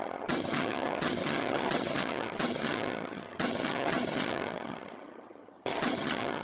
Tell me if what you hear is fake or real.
fake